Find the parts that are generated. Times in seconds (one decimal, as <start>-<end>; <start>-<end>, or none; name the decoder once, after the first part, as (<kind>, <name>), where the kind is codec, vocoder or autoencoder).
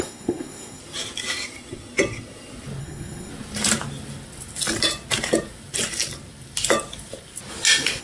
0.0-0.8 (codec, SNAC); 2.8-3.3